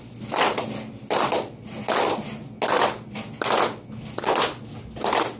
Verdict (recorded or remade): recorded